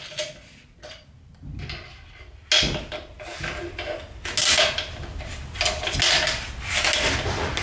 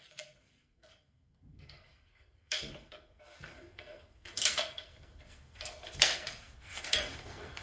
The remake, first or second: second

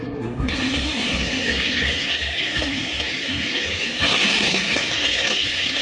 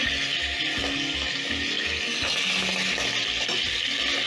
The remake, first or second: first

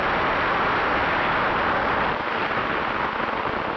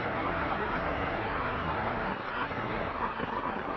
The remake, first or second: second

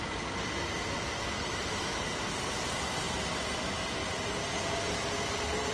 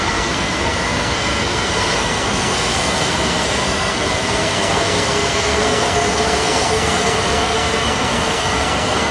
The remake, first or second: second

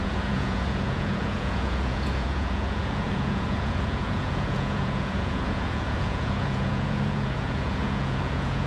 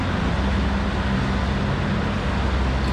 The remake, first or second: first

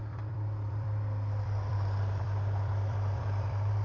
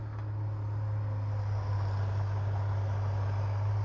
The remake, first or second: first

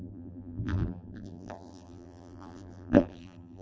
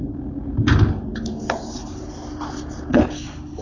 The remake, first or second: first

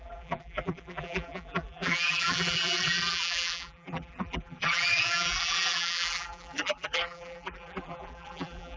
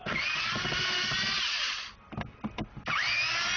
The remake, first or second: first